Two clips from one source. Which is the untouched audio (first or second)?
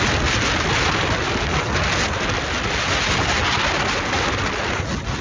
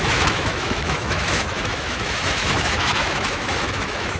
first